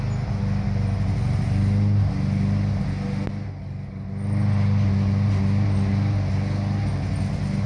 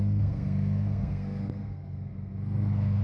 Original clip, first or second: first